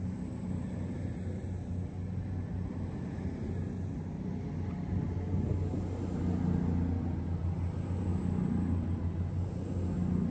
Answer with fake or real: real